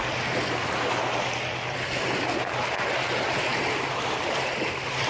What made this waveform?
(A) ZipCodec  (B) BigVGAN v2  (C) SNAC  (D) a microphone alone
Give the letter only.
D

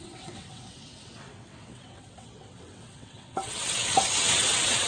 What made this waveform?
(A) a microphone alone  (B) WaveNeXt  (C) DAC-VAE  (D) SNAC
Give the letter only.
B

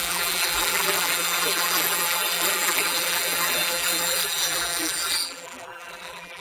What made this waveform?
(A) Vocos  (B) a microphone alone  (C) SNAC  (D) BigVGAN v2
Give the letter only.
D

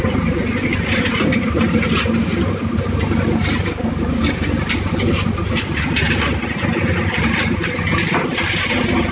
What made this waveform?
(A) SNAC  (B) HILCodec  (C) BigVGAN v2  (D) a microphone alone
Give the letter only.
D